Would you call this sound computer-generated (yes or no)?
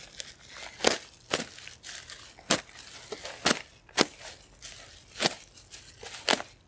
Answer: no